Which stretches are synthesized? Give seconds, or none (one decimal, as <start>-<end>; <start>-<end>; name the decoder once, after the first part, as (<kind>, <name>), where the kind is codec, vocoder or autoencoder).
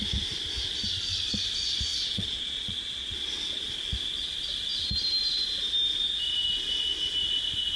1.9-3.7 (vocoder, Vocos)